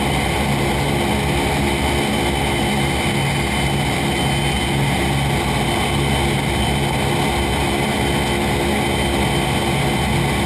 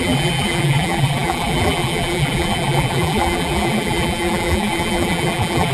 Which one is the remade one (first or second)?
second